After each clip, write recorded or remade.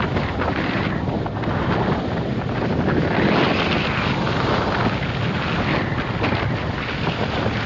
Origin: recorded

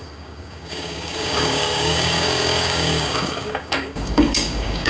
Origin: remade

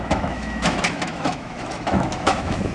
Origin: remade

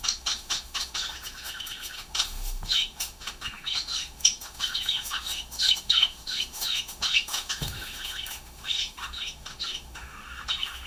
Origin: remade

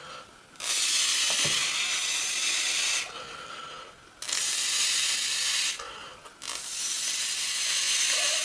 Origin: recorded